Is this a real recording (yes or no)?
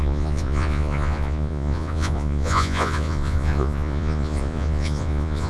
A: no